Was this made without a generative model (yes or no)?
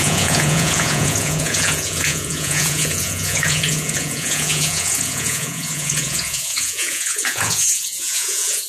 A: no